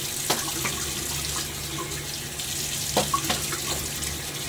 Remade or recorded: recorded